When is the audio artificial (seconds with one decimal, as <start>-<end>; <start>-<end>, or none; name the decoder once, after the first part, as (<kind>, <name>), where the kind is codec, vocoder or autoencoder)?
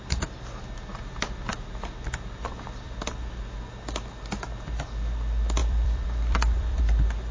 0.9-2.9 (vocoder, BigVGAN v2); 5.6-6.8